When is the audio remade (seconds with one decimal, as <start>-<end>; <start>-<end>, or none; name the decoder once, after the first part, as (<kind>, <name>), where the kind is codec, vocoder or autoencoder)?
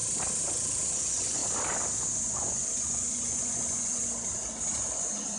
0.9-1.4 (vocoder, Vocos); 2.2-4.0; 4.7-5.4